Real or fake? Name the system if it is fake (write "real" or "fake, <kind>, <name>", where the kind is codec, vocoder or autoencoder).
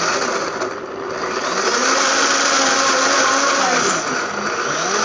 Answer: real